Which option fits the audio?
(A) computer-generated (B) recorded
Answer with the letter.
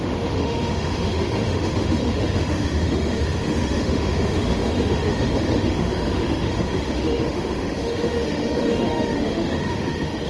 A